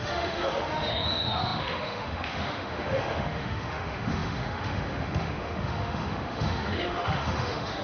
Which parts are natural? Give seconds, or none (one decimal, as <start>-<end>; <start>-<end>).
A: none